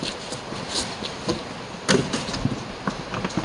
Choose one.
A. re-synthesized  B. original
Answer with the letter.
B